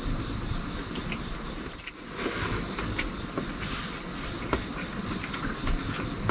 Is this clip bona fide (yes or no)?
yes